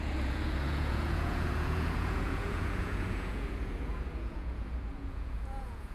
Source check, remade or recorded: remade